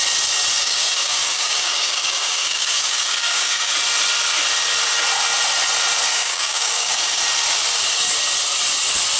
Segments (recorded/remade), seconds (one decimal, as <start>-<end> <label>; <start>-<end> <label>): 0.0-0.6 recorded; 0.6-3.7 remade; 3.7-6.1 recorded; 6.1-7.2 remade; 7.2-9.2 recorded